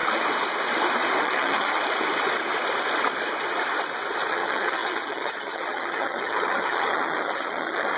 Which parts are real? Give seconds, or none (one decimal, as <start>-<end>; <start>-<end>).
0.0-1.2; 1.8-4.3